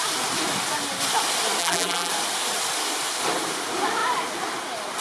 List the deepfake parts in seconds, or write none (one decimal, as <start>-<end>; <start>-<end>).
1.6-2.1